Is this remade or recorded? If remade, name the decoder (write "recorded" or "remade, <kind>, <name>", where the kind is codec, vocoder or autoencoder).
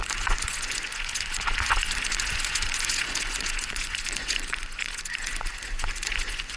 remade, vocoder, Vocos